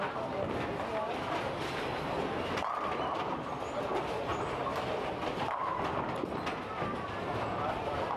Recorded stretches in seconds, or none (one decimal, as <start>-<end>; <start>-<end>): 0.0-8.2